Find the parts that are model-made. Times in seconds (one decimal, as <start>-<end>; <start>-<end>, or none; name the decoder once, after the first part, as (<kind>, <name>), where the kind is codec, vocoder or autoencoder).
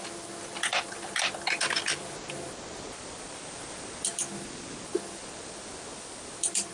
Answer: none